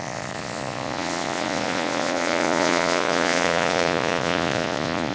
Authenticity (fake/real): fake